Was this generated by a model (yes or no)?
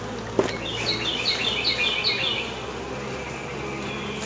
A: no